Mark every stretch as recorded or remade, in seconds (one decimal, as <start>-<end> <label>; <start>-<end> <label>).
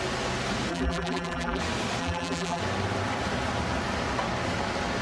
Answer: 0.0-0.7 recorded; 0.7-1.6 remade; 1.6-2.0 recorded; 2.0-2.6 remade; 2.6-5.0 recorded